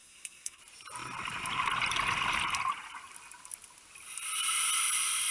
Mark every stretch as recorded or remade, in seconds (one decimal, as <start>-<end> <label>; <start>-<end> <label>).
0.0-0.6 remade; 0.6-5.3 recorded

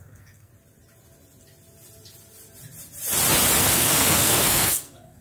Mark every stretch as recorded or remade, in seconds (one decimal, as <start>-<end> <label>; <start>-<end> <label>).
0.0-0.5 remade; 0.5-3.6 recorded; 3.6-5.2 remade